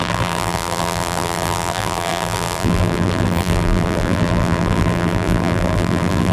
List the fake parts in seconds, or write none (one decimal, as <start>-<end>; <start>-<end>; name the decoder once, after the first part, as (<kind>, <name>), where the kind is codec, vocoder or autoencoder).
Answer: 0.0-6.3 (vocoder, BigVGAN v2)